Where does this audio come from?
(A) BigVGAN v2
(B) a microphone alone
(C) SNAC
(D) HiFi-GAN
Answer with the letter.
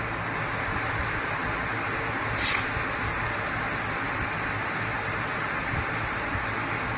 B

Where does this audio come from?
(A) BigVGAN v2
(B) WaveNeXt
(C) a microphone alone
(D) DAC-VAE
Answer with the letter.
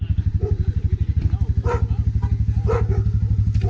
C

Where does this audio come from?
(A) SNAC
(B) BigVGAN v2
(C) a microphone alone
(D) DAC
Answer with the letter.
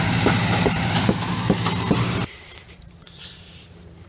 B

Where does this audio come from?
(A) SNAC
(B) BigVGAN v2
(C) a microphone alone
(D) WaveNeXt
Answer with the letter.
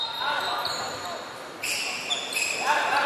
C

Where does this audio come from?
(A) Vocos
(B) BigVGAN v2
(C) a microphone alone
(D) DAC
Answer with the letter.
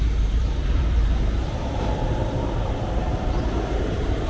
B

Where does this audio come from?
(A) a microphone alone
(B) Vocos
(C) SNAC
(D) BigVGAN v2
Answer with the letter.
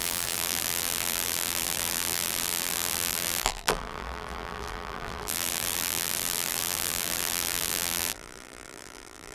D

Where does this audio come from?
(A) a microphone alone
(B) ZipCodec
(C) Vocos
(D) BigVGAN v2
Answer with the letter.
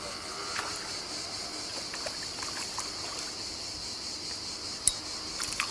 A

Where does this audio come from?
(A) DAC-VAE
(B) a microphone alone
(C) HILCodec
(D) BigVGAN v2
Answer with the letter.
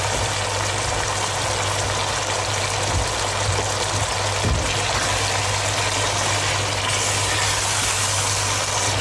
B